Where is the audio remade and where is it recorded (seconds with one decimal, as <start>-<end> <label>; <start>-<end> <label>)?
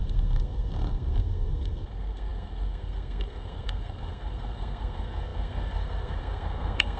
0.0-7.0 remade